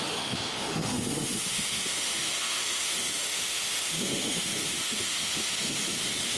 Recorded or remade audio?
remade